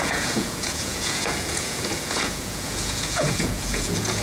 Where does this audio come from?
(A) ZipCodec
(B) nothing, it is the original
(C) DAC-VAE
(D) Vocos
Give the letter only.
D